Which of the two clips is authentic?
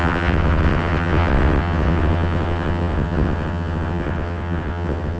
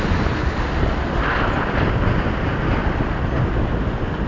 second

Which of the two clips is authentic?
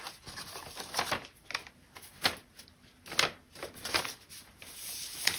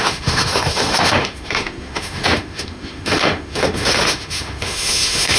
first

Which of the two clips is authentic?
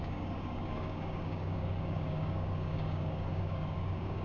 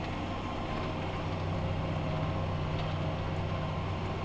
second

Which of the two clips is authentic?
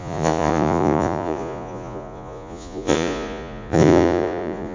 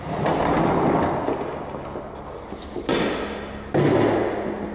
second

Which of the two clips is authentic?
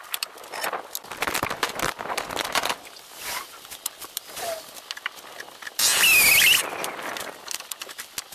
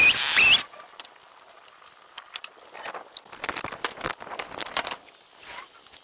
first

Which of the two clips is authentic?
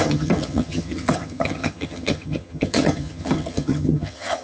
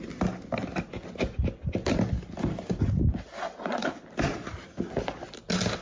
second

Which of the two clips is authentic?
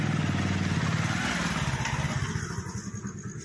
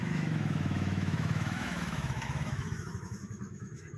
first